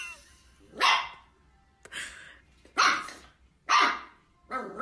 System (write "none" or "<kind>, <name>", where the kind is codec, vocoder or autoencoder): none